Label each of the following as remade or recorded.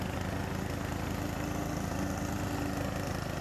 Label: recorded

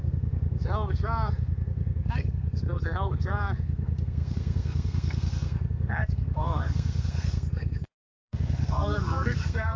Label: remade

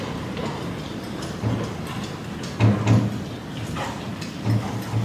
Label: recorded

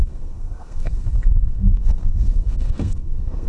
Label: remade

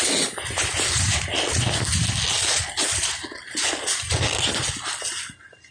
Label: recorded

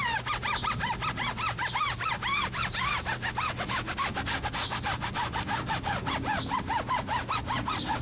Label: recorded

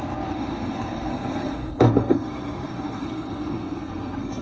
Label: remade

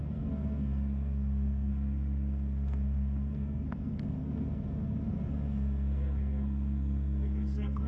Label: remade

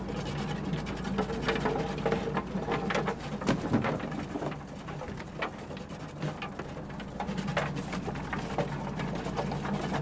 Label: recorded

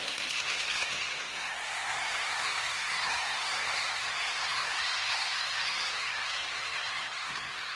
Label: remade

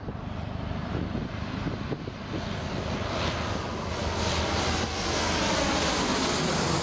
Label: recorded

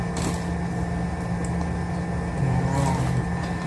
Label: recorded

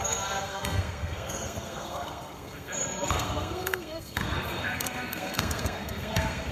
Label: remade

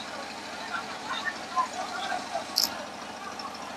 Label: recorded